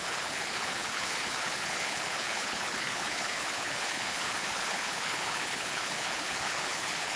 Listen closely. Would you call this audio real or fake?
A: fake